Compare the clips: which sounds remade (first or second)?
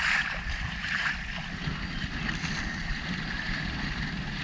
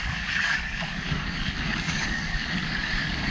second